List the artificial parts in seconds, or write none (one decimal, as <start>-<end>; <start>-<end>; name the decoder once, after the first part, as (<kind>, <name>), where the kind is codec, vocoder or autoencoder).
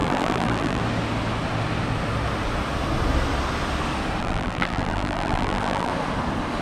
0.0-0.8 (vocoder, BigVGAN v2); 4.2-5.9